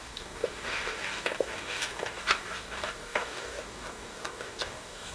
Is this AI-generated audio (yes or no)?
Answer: yes